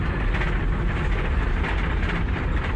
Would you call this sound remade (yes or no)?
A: no